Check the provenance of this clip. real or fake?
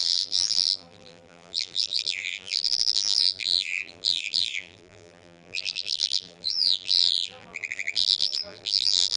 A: fake